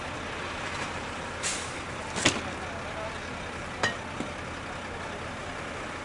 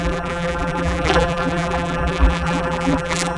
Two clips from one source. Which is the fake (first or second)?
second